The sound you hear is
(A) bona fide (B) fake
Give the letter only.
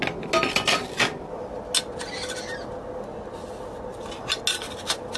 A